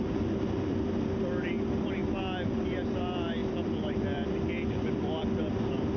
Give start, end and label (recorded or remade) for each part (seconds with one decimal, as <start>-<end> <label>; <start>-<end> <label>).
0.0-2.0 remade; 2.0-3.0 recorded; 3.0-6.0 remade